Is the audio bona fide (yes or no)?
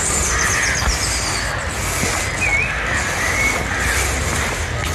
yes